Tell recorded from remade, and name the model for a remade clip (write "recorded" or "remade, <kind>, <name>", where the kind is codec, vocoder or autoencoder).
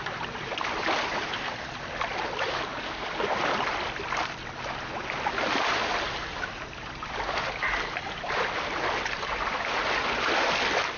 recorded